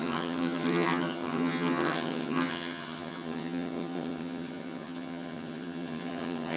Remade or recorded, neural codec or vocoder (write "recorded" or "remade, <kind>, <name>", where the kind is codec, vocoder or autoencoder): remade, vocoder, HiFi-GAN